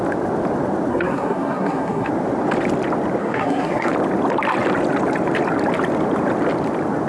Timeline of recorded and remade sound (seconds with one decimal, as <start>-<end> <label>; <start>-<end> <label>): 0.0-0.9 recorded; 0.9-2.1 remade; 2.1-3.2 recorded; 3.2-3.9 remade; 3.9-7.1 recorded